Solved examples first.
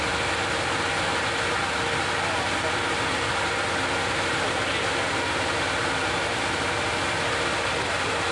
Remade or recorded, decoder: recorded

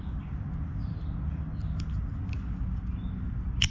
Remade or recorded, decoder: recorded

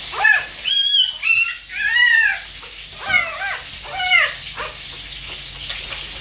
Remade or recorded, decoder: recorded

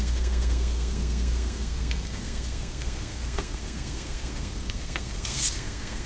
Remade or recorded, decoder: remade, codec, SNAC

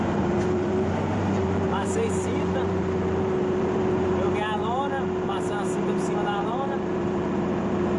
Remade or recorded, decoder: remade, vocoder, BigVGAN v2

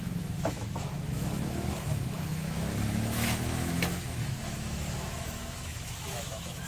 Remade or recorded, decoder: remade, autoencoder, DAC-VAE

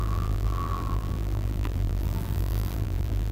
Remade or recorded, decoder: remade, vocoder, BigVGAN v2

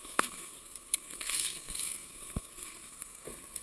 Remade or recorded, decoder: remade, codec, SNAC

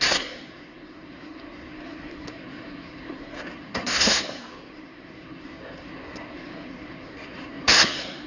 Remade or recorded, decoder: remade, codec, SNAC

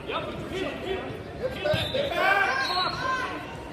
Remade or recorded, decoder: remade, vocoder, BigVGAN v2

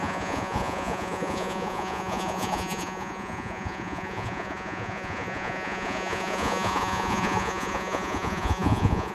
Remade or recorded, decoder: remade, vocoder, Vocos